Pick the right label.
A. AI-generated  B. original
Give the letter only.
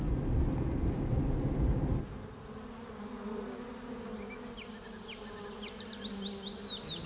B